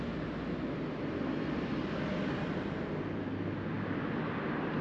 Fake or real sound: real